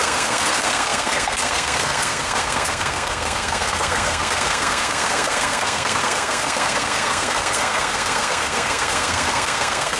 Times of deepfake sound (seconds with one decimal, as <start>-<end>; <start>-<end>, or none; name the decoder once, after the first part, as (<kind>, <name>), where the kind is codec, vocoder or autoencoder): 0.0-10.0 (codec, SNAC)